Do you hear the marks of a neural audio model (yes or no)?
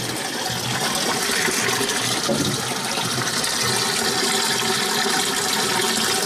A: no